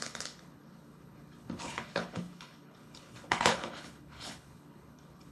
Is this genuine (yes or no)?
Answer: no